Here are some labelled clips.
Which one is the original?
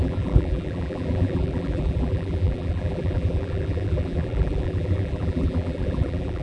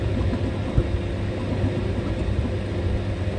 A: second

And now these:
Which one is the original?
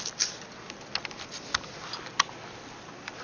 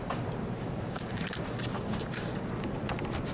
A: first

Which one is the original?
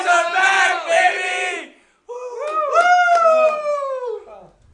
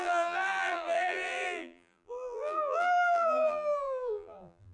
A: first